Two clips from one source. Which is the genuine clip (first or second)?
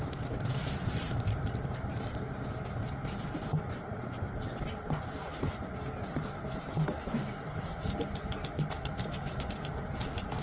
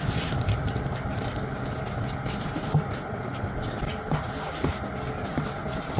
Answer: second